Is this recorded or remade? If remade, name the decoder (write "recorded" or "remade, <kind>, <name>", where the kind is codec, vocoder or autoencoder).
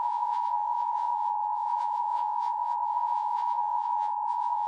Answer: remade, vocoder, Vocos